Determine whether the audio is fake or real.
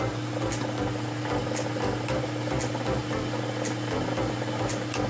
real